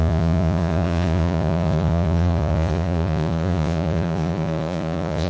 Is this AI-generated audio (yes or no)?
yes